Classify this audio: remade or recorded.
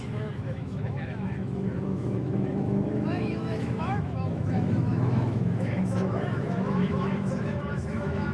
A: remade